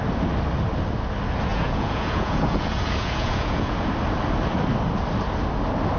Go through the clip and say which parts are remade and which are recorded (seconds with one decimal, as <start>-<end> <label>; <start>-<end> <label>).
0.0-1.5 recorded; 1.5-3.9 remade; 3.9-6.0 recorded